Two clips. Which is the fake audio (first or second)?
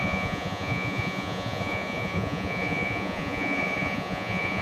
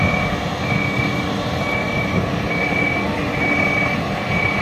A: first